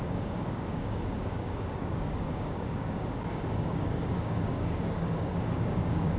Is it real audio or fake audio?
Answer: fake